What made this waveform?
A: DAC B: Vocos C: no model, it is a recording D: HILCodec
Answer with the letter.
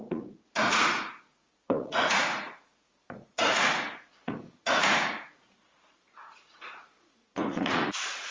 B